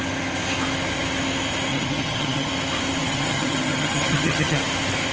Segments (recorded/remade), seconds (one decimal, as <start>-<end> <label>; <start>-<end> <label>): 0.0-1.7 recorded; 1.7-2.5 remade; 2.5-3.0 recorded; 3.0-4.6 remade; 4.6-5.1 recorded